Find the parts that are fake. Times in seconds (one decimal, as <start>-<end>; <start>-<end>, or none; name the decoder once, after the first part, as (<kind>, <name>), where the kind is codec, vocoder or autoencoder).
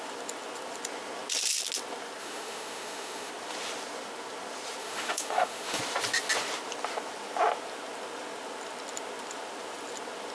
2.2-3.3 (autoencoder, DAC-VAE); 4.8-5.8